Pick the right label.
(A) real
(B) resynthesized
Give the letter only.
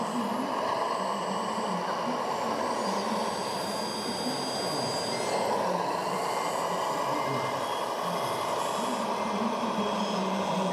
A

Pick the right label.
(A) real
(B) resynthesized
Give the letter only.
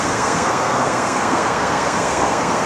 B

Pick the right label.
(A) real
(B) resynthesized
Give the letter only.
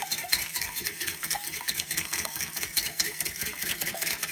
B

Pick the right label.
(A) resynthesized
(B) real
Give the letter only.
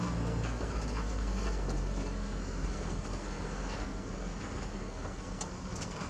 A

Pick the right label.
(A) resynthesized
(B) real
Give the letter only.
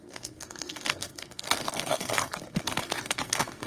A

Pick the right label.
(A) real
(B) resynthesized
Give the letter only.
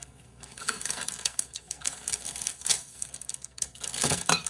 B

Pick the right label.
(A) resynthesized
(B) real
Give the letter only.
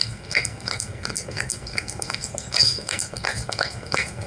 A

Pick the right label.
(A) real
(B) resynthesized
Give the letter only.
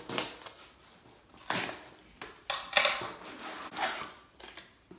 A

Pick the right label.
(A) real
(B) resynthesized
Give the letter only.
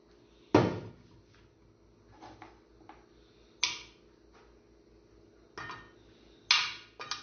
A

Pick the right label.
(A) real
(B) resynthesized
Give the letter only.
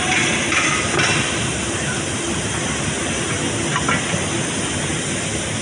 A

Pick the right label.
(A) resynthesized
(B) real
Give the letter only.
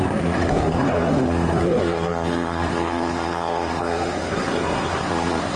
A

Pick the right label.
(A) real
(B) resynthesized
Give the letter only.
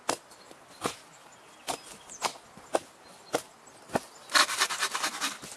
A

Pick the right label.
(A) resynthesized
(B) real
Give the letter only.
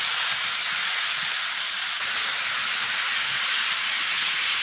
B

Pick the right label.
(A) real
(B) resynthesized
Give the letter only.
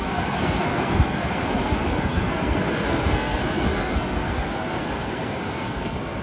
B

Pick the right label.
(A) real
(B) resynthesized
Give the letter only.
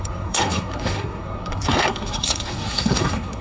B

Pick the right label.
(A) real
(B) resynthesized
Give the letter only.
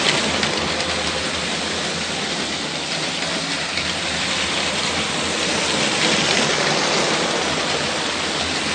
A